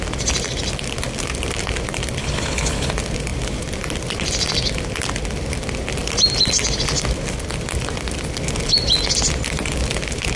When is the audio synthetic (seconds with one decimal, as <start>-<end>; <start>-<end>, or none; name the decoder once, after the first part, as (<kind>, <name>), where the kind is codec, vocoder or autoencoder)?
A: 2.2-2.9 (codec, HILCodec)